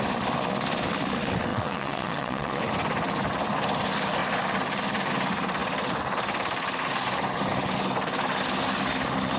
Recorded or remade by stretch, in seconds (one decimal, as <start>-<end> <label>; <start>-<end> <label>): 0.0-1.5 recorded; 1.5-2.6 remade; 2.6-9.4 recorded